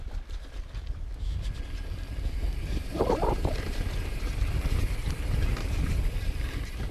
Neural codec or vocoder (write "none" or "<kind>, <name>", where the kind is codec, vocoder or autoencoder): none